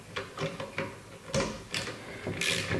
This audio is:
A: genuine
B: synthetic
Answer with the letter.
A